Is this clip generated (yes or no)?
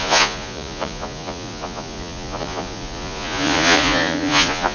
yes